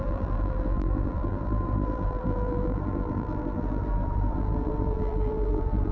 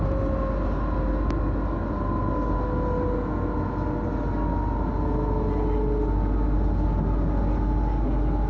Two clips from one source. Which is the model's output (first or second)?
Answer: first